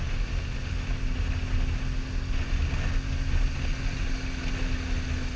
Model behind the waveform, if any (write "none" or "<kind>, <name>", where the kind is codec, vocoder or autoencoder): none